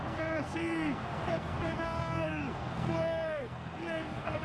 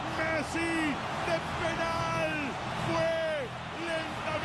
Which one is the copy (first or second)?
first